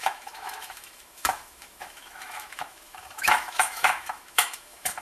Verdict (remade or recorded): remade